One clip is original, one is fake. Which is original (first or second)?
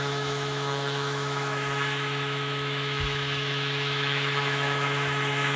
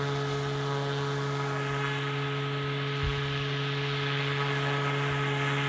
second